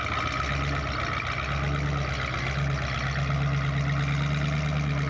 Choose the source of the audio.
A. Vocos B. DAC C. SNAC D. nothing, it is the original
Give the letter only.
D